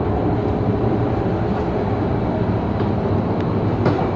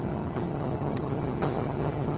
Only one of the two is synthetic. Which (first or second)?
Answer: second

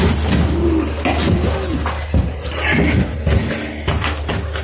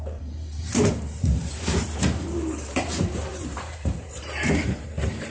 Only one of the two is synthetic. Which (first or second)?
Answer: second